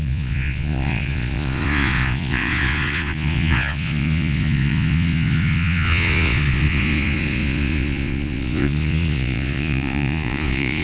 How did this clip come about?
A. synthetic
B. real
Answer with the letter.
A